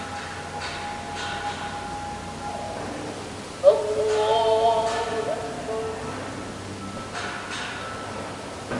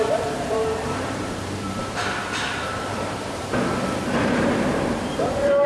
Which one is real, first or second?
first